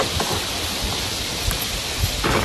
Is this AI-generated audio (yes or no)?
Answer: no